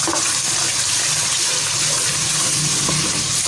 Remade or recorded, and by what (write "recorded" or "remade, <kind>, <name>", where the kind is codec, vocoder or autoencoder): recorded